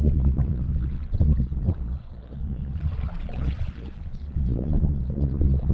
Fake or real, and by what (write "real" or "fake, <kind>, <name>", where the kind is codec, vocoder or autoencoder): fake, vocoder, Vocos